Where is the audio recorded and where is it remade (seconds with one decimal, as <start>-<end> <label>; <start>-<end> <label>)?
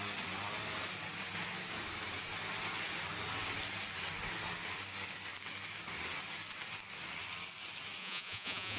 0.0-8.0 recorded; 8.0-8.8 remade